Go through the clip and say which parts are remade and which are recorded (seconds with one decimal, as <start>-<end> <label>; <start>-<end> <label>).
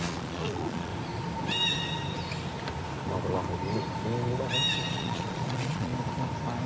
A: 0.0-0.9 remade; 0.9-4.9 recorded; 4.9-5.9 remade; 5.9-6.7 recorded